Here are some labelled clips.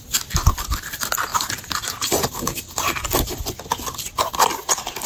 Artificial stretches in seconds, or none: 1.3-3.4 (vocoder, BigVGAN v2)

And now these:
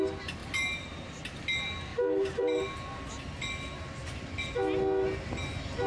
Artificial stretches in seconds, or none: 0.4-1.1 (vocoder, BigVGAN v2); 1.9-2.6

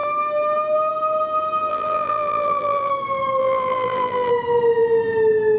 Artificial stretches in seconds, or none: 1.7-2.9 (vocoder, BigVGAN v2); 3.4-4.3

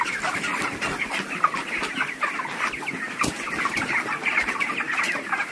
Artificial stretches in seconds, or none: 0.0-0.5 (vocoder, BigVGAN v2); 3.8-5.5